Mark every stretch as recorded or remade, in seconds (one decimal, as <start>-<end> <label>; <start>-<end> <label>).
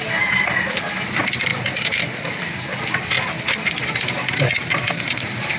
0.0-4.6 recorded; 4.6-5.6 remade